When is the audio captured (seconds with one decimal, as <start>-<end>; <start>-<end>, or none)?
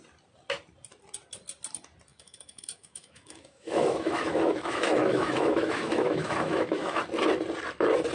0.0-2.1; 7.0-8.1